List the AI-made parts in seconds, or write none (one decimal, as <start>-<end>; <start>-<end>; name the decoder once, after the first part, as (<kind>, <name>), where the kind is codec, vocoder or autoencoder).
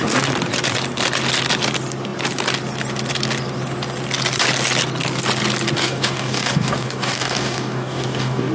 5.8-8.5 (codec, DAC)